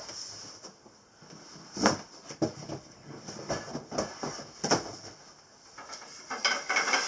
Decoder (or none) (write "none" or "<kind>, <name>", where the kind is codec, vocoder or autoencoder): none